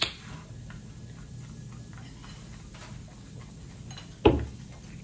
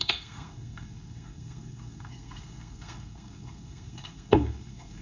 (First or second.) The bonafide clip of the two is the first